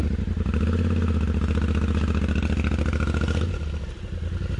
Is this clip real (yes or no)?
yes